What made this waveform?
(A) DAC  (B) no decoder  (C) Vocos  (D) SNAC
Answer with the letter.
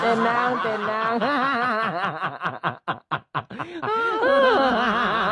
B